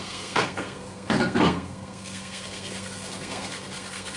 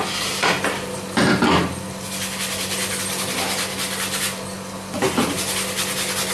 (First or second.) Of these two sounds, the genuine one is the second